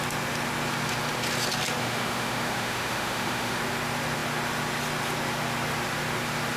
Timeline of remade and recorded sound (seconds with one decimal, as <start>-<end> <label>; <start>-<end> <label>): 0.0-1.8 recorded; 1.8-3.6 remade; 3.6-6.6 recorded